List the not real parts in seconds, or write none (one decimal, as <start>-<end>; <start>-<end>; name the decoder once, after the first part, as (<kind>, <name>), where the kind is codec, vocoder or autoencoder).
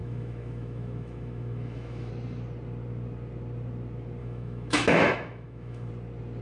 0.0-2.1 (autoencoder, DAC-VAE); 4.2-5.9